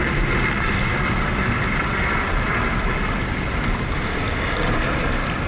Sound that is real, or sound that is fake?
real